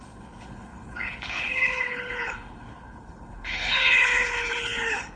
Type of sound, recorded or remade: remade